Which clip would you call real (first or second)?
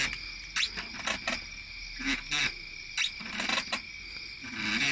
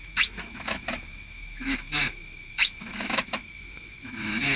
first